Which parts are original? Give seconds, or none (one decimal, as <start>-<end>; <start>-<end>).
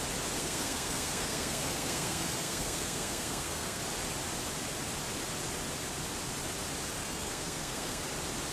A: 0.0-0.4; 3.8-7.0; 8.0-8.5